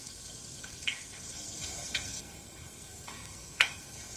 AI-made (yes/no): yes